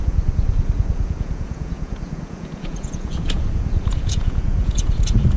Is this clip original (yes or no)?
no